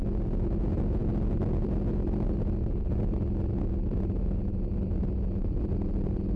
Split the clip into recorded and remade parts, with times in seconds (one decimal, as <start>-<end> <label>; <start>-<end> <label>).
0.0-6.4 recorded